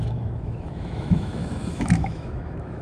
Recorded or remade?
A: remade